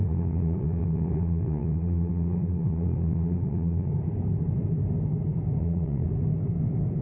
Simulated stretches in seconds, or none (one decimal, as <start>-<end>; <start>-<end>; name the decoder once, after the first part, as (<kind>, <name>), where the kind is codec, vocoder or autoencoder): 0.0-3.9 (vocoder, Vocos); 5.6-6.1